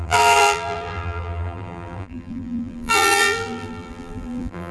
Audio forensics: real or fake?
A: fake